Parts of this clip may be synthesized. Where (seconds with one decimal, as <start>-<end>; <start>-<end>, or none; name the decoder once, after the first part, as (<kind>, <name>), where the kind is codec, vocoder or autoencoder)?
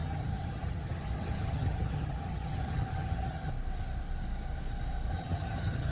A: 0.0-3.5 (vocoder, HiFi-GAN); 5.1-5.9